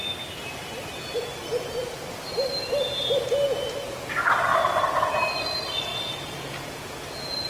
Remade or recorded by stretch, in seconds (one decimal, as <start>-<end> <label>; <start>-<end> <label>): 0.0-5.9 recorded; 5.9-7.5 remade